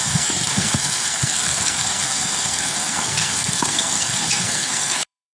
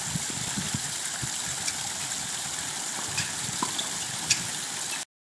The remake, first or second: first